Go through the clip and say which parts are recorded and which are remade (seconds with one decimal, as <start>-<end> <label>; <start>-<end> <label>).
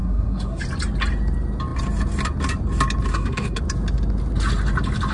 0.0-0.6 remade; 0.6-3.1 recorded; 3.1-3.6 remade; 3.6-5.1 recorded